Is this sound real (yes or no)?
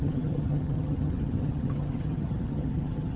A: no